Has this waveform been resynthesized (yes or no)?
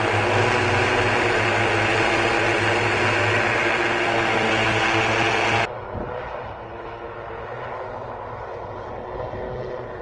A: no